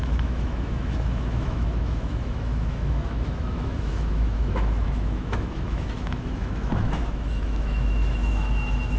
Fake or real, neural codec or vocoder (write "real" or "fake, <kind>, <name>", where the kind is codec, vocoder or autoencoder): fake, autoencoder, DAC-VAE